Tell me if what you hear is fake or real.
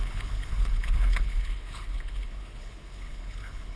fake